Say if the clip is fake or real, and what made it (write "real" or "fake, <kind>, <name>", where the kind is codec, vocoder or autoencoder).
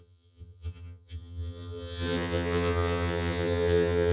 fake, vocoder, HiFi-GAN